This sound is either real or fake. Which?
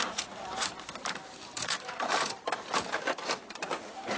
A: fake